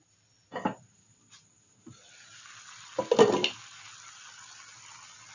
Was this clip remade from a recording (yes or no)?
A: no